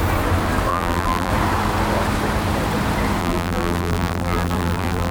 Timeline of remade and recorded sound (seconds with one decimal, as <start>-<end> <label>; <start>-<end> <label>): 0.0-0.7 recorded; 0.7-1.3 remade; 1.3-3.2 recorded; 3.2-5.1 remade